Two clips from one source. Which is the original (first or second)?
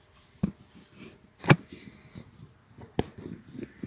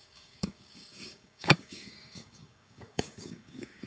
first